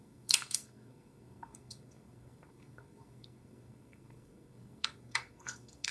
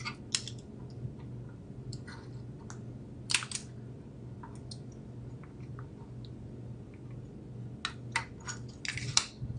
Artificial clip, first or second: first